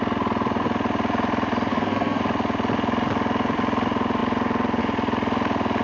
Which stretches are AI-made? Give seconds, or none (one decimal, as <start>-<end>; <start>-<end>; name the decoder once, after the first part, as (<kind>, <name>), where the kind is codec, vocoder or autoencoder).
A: 1.7-2.2 (codec, SNAC)